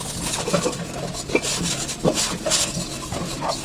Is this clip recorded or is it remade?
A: recorded